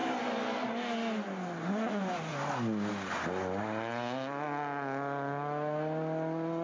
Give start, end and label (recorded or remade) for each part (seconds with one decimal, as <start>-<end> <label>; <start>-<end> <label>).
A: 0.0-6.6 recorded